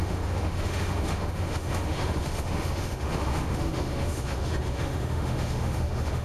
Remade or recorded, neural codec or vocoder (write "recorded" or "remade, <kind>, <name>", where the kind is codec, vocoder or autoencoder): remade, autoencoder, DAC-VAE